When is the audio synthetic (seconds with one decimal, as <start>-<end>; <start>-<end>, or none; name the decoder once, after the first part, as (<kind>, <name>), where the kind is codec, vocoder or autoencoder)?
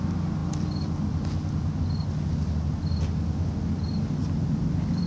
none